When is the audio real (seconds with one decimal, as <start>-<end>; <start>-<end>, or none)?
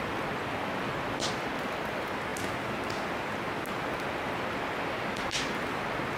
0.0-6.2